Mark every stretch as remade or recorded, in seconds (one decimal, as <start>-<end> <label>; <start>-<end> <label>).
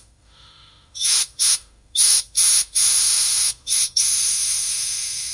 0.0-5.3 remade